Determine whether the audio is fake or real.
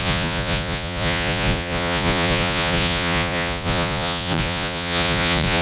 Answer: fake